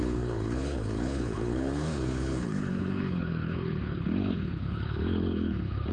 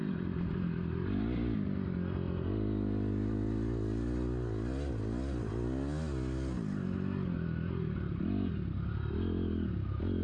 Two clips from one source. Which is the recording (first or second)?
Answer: second